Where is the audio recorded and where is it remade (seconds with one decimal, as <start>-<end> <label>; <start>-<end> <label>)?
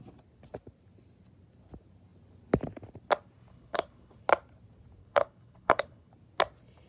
0.0-3.5 recorded; 3.5-4.2 remade; 4.2-5.0 recorded; 5.0-6.1 remade; 6.1-6.9 recorded